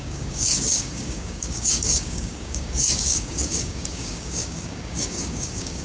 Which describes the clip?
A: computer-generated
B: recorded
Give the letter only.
A